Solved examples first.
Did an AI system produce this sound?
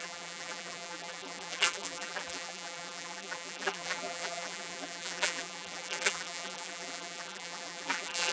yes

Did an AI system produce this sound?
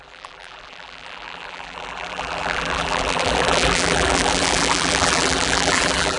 yes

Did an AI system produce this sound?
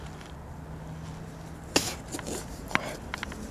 no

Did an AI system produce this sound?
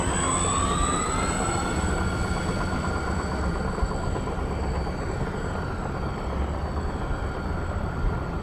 no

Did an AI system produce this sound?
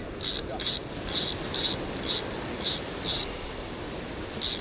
yes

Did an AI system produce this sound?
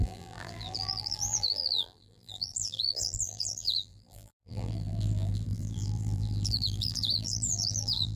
yes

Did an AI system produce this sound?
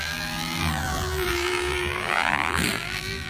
yes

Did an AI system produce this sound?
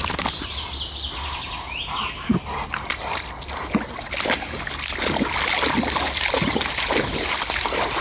no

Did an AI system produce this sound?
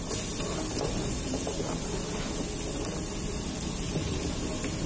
no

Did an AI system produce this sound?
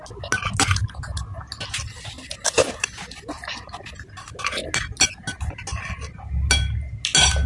no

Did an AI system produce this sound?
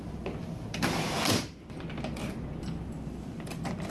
yes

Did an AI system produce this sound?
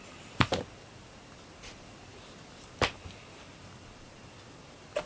no